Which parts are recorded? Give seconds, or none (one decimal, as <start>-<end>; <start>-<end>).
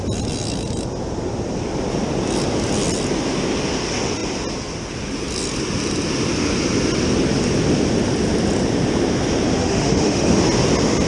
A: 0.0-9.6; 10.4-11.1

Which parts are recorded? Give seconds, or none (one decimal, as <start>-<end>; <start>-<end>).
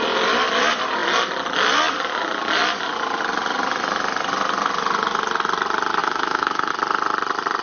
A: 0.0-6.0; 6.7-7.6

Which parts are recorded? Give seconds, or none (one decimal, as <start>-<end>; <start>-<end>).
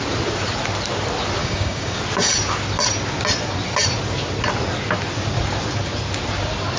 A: 0.0-1.4; 2.0-6.8